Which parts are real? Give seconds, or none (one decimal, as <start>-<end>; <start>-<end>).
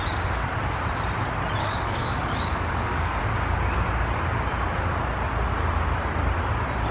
0.0-1.6; 3.2-6.9